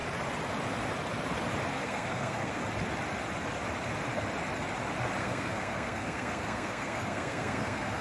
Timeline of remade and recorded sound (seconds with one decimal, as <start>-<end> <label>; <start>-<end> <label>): 0.0-1.7 recorded; 1.7-2.6 remade; 2.6-5.2 recorded; 5.2-8.0 remade